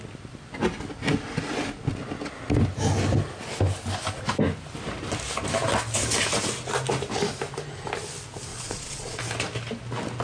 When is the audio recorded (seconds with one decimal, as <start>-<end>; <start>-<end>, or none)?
0.0-8.5; 9.2-10.2